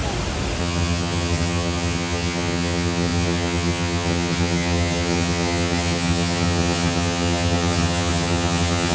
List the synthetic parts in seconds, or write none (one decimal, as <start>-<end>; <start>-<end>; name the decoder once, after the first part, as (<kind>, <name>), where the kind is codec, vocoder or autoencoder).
0.6-8.9 (vocoder, HiFi-GAN)